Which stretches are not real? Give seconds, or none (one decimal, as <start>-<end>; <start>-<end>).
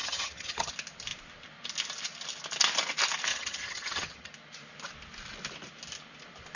0.0-0.7; 3.3-4.3